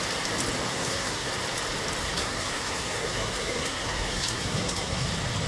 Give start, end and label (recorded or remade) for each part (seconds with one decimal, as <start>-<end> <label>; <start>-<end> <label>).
0.0-0.7 recorded; 0.7-1.3 remade; 1.3-2.0 recorded; 2.0-5.1 remade; 5.1-5.5 recorded